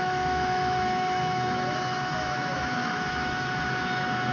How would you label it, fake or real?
fake